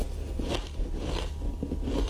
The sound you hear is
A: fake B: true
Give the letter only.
B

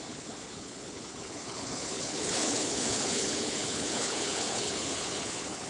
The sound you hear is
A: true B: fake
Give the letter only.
B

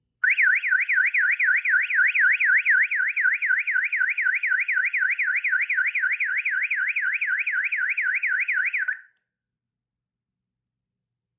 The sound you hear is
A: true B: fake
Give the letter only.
A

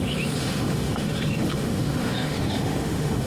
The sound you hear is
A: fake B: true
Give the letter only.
A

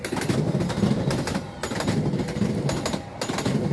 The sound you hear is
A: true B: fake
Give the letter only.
A